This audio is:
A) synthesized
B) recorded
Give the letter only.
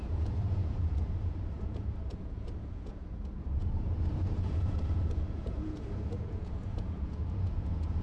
A